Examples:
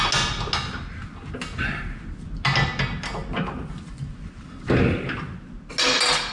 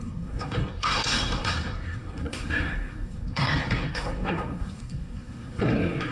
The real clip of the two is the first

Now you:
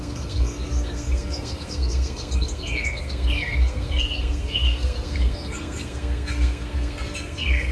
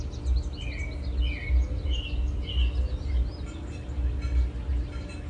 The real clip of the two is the second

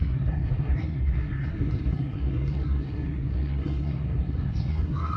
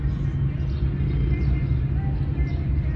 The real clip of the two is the second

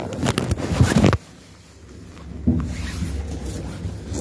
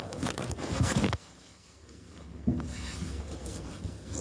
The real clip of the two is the first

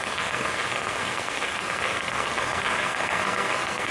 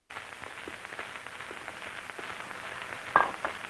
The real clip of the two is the second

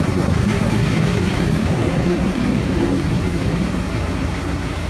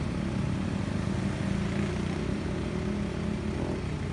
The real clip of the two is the second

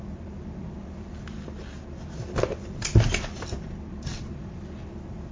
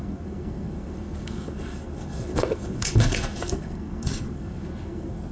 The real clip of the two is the first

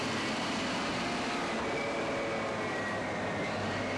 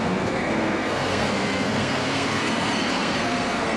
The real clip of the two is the first